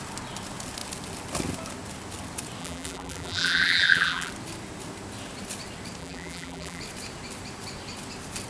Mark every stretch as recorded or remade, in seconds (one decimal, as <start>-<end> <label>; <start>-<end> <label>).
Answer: 0.0-2.6 recorded; 2.6-4.3 remade; 4.3-6.0 recorded; 6.0-6.8 remade; 6.8-8.5 recorded